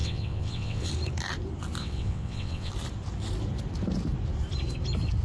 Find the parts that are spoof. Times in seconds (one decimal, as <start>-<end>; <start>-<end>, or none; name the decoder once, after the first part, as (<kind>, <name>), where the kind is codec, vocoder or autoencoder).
0.0-0.9 (vocoder, WaveNeXt); 1.8-2.7